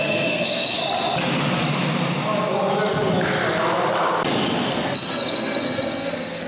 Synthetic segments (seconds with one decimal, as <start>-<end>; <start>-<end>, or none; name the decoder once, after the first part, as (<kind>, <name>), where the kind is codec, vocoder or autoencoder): 0.0-0.8 (codec, SNAC); 4.7-6.5